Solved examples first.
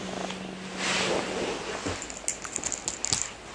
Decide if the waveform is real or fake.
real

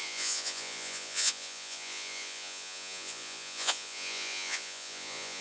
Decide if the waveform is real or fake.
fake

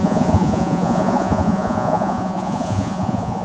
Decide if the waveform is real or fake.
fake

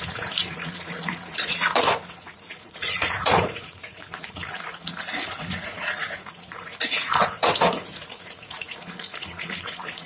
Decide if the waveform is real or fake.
fake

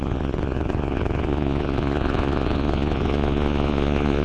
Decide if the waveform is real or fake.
fake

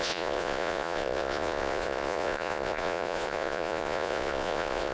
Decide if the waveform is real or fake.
fake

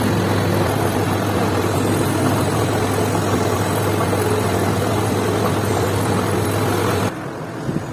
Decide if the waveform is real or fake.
real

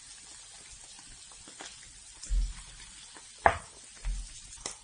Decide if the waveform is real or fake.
real